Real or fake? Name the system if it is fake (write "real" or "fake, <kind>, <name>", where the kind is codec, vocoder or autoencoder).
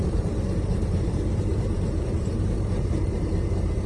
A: fake, vocoder, BigVGAN v2